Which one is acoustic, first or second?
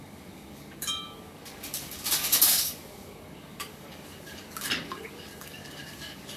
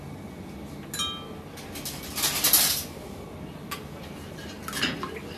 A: second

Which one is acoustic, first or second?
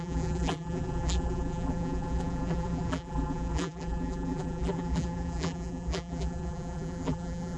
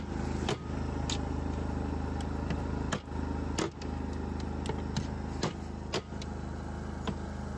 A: second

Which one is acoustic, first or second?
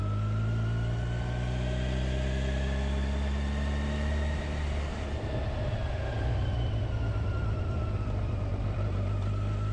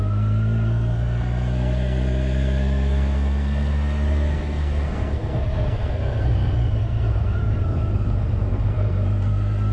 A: first